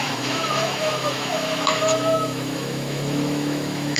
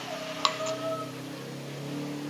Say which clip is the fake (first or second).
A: first